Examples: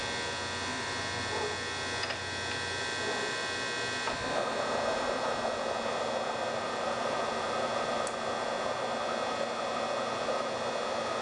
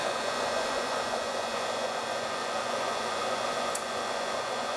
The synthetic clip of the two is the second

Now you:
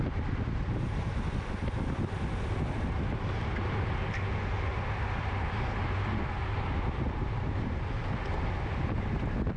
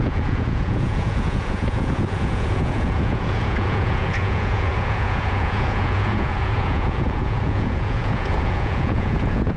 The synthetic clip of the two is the second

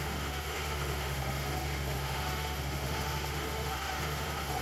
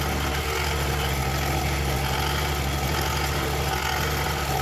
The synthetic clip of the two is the first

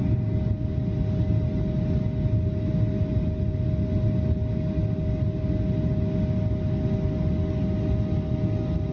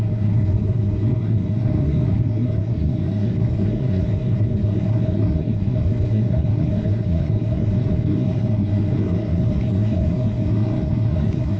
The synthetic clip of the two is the second